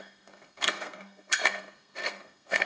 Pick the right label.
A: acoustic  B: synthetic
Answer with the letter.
B